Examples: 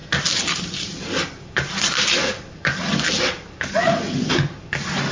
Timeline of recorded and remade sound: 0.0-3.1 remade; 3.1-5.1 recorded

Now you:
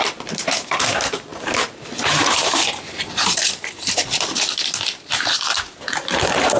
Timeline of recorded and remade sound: 0.0-6.6 remade

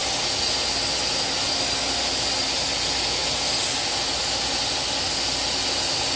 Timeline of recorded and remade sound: 0.0-6.2 recorded

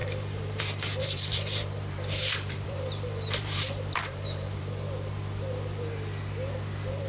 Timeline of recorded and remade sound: 0.0-0.6 remade; 0.6-1.0 recorded; 1.0-4.7 remade; 4.7-7.1 recorded

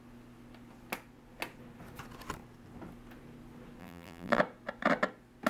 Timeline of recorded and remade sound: 0.0-3.8 recorded; 3.8-4.4 remade; 4.4-5.5 recorded

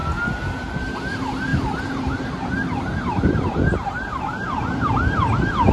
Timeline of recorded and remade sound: 0.0-1.5 recorded; 1.5-4.9 remade; 4.9-5.7 recorded

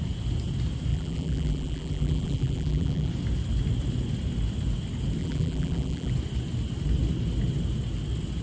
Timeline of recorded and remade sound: 0.0-0.9 recorded; 0.9-3.1 remade; 3.1-5.2 recorded; 5.2-6.1 remade; 6.1-8.4 recorded